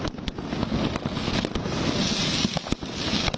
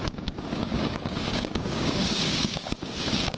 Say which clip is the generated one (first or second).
second